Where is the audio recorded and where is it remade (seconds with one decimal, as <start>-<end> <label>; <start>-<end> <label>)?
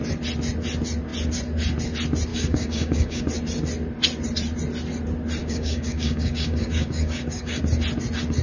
0.0-2.3 recorded; 2.3-3.2 remade; 3.2-5.4 recorded; 5.4-7.6 remade; 7.6-8.4 recorded